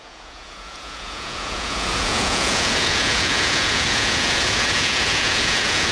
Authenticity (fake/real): fake